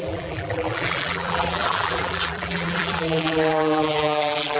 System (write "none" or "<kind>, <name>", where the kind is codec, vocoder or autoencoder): vocoder, BigVGAN v2